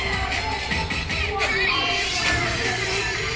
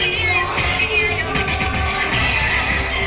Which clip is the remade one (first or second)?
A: first